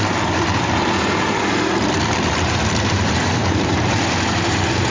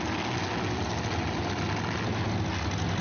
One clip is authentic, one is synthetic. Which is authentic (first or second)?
second